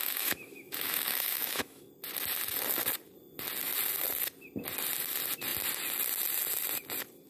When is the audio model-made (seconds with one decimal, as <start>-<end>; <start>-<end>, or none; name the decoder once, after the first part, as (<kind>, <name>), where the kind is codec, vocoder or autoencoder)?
0.0-1.9 (autoencoder, DAC-VAE)